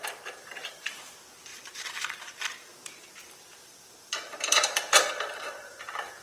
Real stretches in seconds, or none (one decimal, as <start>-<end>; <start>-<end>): none